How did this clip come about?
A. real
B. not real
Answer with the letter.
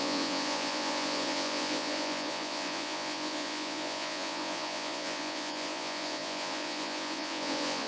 B